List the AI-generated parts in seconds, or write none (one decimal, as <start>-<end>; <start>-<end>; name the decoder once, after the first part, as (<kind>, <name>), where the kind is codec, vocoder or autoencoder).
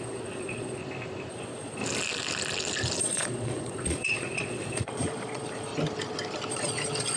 0.0-0.8 (vocoder, Vocos); 1.3-1.8; 3.0-5.7; 6.5-7.2